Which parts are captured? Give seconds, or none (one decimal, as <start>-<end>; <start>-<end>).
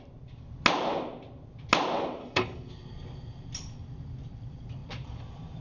0.0-2.2; 2.7-5.6